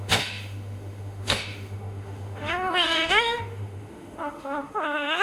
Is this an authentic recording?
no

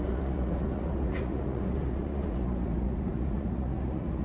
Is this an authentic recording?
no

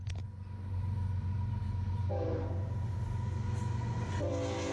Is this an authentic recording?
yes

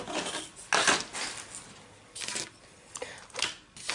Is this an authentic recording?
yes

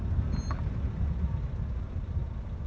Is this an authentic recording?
yes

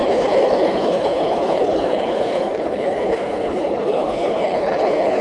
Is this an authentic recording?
no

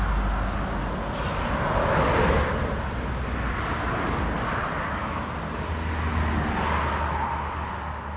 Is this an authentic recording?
yes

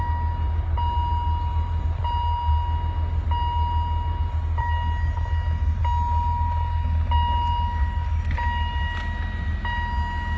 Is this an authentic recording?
yes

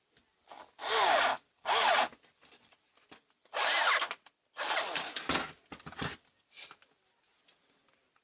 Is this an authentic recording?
yes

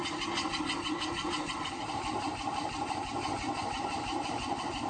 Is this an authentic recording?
yes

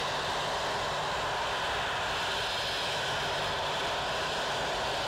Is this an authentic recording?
yes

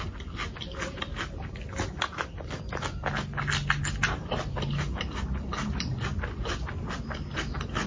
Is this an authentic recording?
yes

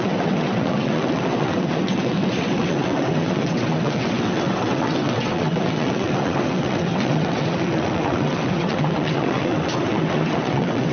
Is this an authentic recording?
no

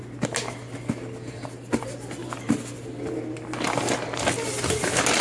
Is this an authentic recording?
yes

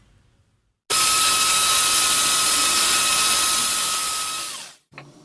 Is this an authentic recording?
yes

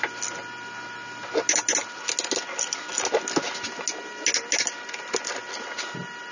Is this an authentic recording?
yes